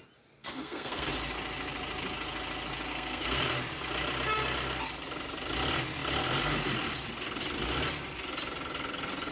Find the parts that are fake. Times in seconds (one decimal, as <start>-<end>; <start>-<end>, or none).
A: 0.4-1.1; 2.9-3.4